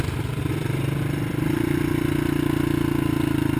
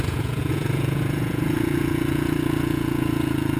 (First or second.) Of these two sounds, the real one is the first